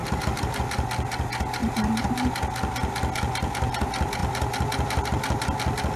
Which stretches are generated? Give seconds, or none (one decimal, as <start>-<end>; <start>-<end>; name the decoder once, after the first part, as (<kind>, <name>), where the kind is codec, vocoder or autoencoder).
0.0-0.6 (vocoder, BigVGAN v2); 1.6-2.3